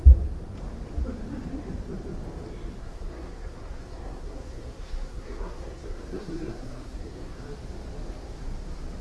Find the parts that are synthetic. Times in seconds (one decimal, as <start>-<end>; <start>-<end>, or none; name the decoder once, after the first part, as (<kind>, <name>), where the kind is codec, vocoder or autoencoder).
2.8-7.4 (codec, SNAC)